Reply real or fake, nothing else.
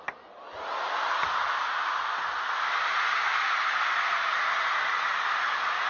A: real